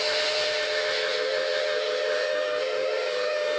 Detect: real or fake fake